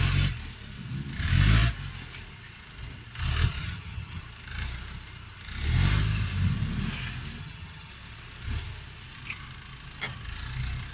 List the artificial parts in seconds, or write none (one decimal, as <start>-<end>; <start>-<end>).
3.6-4.2; 7.4-7.9